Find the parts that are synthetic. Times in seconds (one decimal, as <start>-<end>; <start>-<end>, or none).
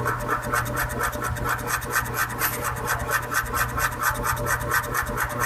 none